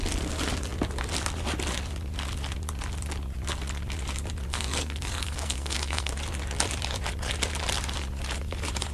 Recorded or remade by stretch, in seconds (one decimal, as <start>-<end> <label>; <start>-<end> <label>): 0.0-4.5 recorded; 4.5-6.1 remade; 6.1-8.9 recorded

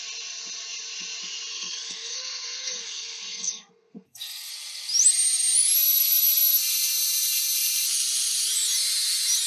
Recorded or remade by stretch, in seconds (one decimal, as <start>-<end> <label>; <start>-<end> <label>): 0.0-1.5 recorded; 1.5-4.5 remade; 4.5-9.5 recorded

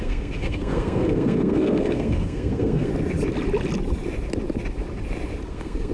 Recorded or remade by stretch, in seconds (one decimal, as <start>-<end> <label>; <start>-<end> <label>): 0.0-2.9 remade; 2.9-5.5 recorded; 5.5-5.9 remade